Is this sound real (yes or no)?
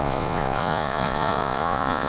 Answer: no